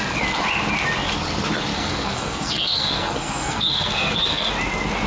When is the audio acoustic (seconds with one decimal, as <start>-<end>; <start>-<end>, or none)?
0.0-1.7; 4.5-5.1